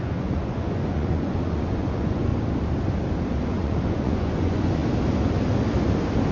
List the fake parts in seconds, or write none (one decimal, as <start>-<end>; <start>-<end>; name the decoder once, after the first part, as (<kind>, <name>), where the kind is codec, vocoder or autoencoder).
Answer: 0.0-2.3 (vocoder, Vocos); 3.4-4.8